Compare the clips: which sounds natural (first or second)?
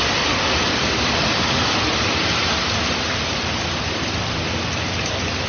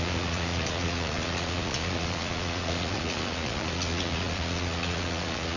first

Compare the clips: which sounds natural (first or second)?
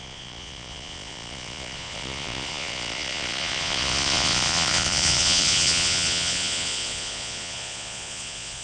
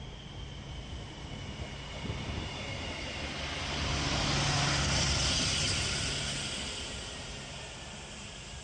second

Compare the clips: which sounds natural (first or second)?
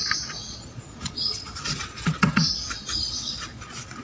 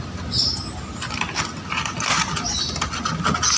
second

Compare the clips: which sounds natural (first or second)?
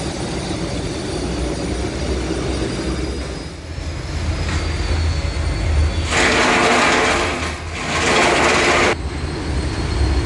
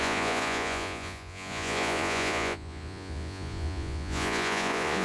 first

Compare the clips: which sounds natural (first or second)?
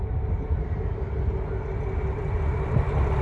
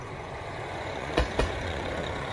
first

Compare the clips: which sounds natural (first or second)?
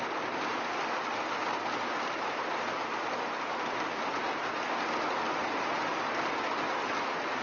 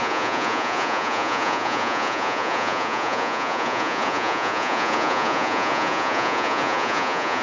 first